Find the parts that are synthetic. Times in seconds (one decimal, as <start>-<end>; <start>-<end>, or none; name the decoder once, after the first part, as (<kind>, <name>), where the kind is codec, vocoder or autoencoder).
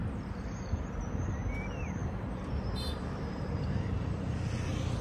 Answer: 1.5-5.0 (vocoder, BigVGAN v2)